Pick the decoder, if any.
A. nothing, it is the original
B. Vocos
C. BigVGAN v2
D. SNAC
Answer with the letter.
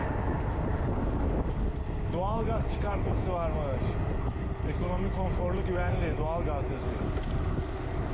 A